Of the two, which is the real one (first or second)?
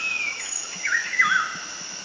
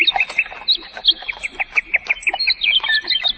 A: second